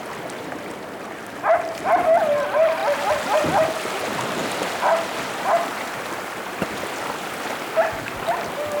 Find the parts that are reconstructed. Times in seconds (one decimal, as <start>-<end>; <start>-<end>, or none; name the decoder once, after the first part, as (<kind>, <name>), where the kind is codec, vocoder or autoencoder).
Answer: none